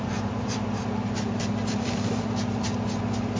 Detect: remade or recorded remade